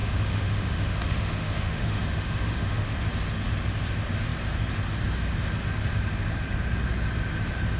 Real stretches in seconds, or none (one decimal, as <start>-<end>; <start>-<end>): 2.9-7.8

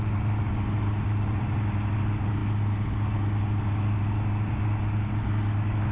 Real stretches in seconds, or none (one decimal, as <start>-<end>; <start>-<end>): 0.0-5.9